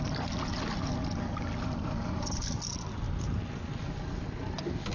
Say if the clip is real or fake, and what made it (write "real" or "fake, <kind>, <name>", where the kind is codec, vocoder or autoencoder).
real